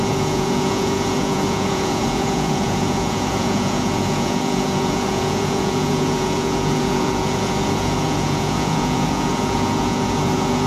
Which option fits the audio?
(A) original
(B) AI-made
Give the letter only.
B